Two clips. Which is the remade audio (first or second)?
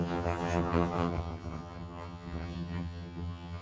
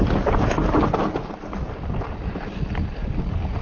first